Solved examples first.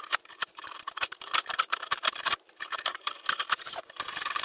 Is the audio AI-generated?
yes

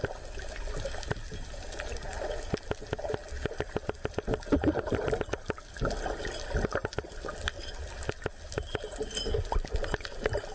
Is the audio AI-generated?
no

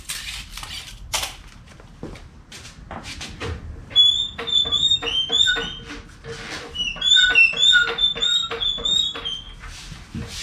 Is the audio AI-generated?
no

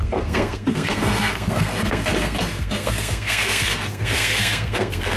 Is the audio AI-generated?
yes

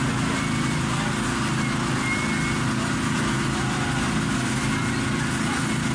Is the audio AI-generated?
no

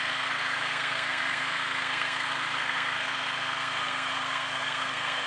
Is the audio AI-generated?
yes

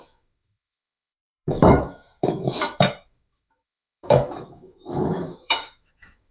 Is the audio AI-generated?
yes